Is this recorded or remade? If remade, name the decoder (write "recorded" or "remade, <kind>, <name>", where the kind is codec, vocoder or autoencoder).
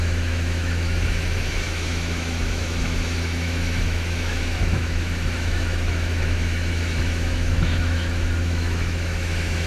remade, autoencoder, DAC-VAE